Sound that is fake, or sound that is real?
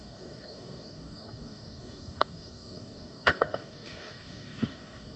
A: fake